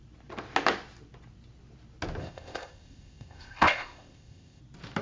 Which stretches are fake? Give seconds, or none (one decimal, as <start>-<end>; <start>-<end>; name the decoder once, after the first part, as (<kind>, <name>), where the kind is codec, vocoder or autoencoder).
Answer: 2.2-4.6 (codec, ZipCodec)